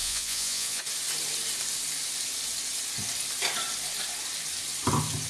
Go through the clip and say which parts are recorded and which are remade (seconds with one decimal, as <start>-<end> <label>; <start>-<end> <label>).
0.0-0.8 remade; 0.8-5.3 recorded